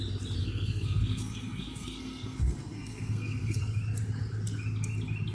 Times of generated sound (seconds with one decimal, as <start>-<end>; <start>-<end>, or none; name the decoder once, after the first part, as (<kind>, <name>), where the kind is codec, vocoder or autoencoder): 0.4-3.6 (codec, SNAC)